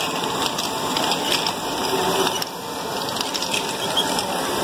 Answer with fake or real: real